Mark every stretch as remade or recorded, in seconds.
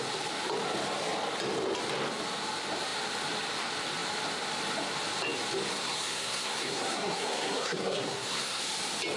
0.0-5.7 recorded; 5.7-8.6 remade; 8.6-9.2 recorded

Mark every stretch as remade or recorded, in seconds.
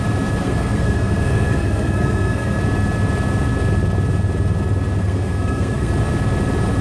0.0-0.4 recorded; 0.4-2.6 remade; 2.6-5.0 recorded; 5.0-5.9 remade; 5.9-6.8 recorded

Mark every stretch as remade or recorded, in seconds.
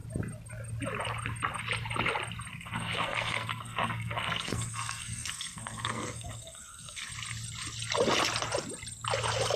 0.0-2.5 recorded; 2.5-7.1 remade; 7.1-9.6 recorded